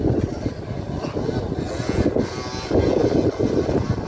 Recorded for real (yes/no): yes